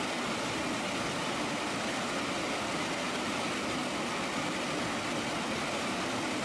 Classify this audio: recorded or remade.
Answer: recorded